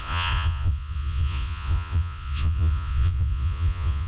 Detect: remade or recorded remade